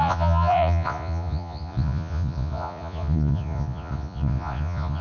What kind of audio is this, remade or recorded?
remade